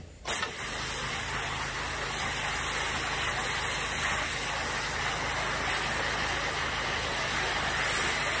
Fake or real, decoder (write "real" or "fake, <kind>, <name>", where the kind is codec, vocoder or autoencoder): real